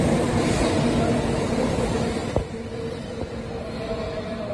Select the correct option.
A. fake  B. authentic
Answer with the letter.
B